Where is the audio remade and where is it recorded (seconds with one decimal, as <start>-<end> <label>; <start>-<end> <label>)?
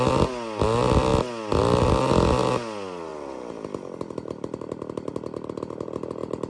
0.0-6.5 recorded